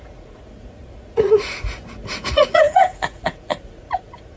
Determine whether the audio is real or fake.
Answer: fake